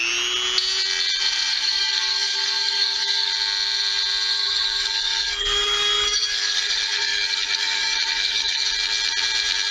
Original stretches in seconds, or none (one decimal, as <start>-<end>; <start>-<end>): 0.0-1.5; 3.3-4.3; 8.7-9.7